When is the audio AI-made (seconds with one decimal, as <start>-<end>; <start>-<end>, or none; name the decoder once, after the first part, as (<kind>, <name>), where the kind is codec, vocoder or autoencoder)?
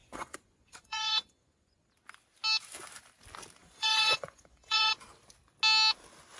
0.0-1.9 (vocoder, Vocos); 3.6-4.9